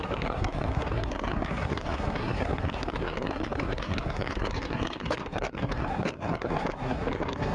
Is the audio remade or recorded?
remade